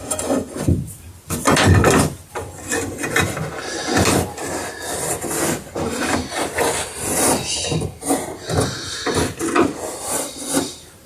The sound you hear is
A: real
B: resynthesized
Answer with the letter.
A